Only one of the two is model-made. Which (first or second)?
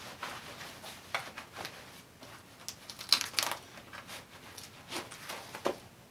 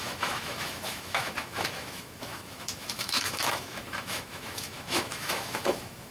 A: second